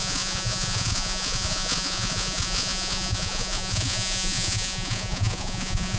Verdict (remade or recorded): remade